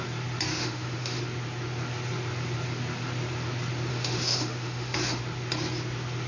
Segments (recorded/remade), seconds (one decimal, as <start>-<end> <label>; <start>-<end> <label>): 0.0-0.5 recorded; 0.5-1.2 remade; 1.2-3.9 recorded; 3.9-5.2 remade; 5.2-6.3 recorded